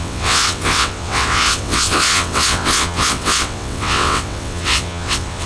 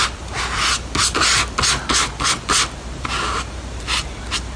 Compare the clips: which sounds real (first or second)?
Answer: second